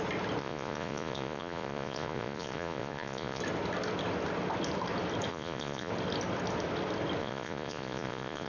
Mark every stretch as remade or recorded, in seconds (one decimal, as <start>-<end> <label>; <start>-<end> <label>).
0.0-0.4 recorded; 0.4-3.4 remade; 3.4-5.3 recorded; 5.3-5.9 remade; 5.9-7.2 recorded; 7.2-8.5 remade